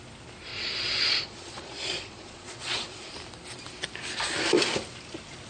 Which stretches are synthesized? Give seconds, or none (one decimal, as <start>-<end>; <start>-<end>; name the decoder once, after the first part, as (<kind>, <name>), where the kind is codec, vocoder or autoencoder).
0.5-3.1 (vocoder, Vocos)